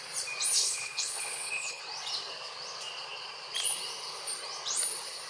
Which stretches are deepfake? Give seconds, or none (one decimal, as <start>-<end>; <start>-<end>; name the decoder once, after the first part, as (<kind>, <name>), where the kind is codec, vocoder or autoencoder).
0.6-1.8 (codec, HILCodec)